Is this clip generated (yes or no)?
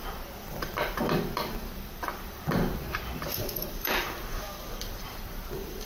yes